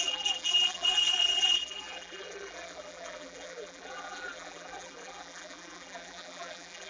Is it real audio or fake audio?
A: fake